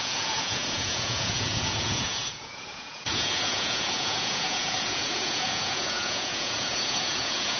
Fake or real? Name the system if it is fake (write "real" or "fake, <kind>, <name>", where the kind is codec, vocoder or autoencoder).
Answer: fake, vocoder, Vocos